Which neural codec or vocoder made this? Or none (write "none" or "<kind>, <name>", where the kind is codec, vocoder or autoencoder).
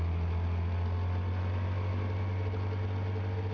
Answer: none